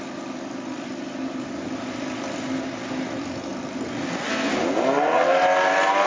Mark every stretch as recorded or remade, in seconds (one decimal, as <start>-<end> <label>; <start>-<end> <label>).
0.0-6.1 recorded